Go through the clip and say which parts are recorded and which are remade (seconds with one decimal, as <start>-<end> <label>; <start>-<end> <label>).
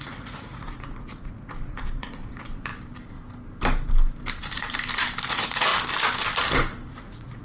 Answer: 0.0-2.7 remade; 2.7-5.3 recorded; 5.3-5.7 remade; 5.7-7.0 recorded; 7.0-7.4 remade